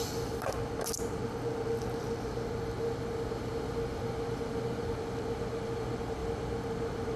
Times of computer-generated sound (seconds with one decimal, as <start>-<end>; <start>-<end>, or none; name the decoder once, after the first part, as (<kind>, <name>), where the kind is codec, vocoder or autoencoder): none